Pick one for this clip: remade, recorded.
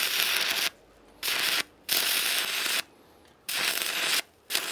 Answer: recorded